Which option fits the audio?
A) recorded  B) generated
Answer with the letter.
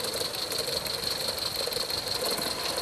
A